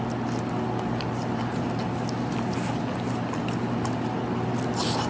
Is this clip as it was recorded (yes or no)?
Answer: yes